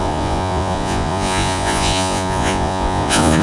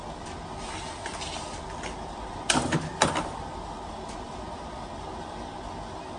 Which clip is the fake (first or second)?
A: first